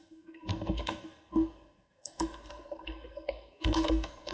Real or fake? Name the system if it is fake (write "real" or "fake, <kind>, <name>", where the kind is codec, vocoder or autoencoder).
fake, codec, SNAC